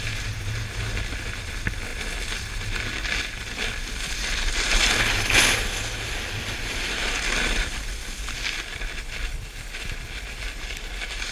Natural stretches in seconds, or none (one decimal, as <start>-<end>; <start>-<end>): 0.0-11.3